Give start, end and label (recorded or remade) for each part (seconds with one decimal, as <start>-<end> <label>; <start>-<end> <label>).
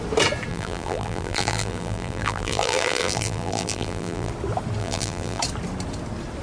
0.0-0.5 recorded; 0.5-4.3 remade; 4.3-4.8 recorded; 4.8-5.4 remade; 5.4-6.4 recorded